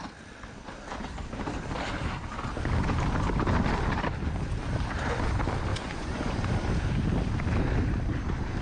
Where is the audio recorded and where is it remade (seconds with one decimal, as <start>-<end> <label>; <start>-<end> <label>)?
0.0-5.7 recorded; 5.7-6.4 remade; 6.4-8.6 recorded